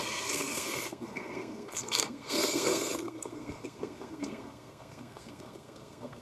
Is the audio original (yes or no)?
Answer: no